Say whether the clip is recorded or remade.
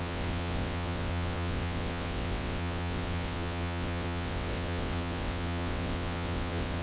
remade